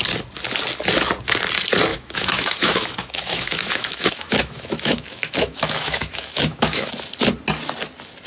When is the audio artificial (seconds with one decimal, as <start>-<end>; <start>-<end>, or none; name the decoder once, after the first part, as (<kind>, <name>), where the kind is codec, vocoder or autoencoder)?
1.9-6.9 (autoencoder, DAC-VAE)